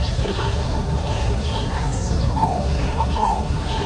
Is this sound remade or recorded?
remade